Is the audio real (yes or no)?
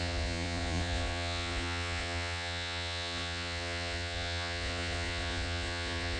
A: no